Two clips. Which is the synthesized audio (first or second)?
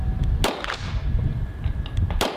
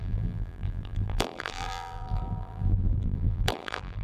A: second